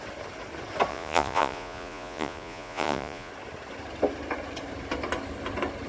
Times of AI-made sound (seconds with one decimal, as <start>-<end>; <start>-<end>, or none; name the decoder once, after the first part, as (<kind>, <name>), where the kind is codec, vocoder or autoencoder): 0.9-3.3 (vocoder, Vocos)